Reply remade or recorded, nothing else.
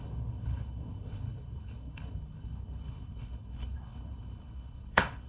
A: remade